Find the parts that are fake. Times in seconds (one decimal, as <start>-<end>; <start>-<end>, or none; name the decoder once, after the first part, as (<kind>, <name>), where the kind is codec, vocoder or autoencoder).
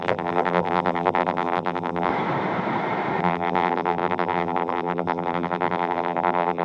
0.0-2.1 (vocoder, BigVGAN v2); 3.2-6.6